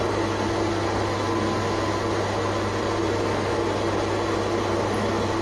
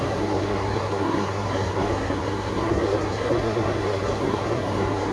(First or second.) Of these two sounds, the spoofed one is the second